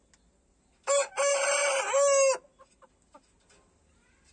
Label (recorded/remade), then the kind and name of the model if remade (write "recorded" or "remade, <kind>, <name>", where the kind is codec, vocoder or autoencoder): recorded